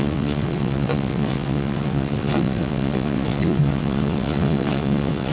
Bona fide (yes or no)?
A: no